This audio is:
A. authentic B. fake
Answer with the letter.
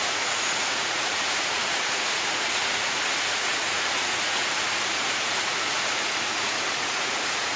B